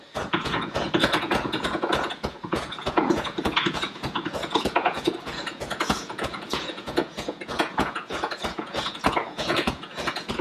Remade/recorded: remade